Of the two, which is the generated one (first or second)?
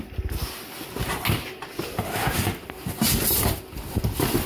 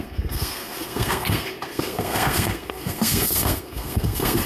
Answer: second